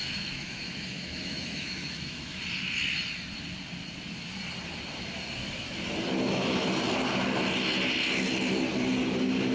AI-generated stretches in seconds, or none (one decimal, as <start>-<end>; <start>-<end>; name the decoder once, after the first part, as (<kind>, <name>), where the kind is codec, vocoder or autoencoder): 0.0-2.4 (autoencoder, DAC-VAE)